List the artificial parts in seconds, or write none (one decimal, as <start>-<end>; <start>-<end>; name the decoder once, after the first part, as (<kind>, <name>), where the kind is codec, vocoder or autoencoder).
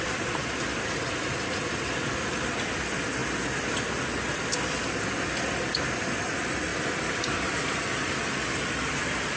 0.7-1.6 (vocoder, BigVGAN v2); 6.7-8.3